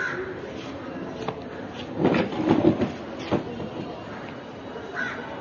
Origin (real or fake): real